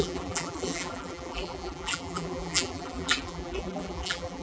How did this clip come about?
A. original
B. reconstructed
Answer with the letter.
B